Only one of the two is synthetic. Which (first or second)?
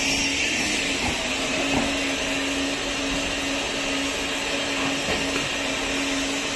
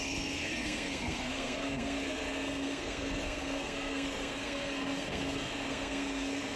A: second